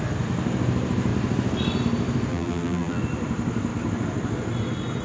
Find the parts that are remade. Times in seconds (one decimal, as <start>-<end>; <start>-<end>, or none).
2.3-3.0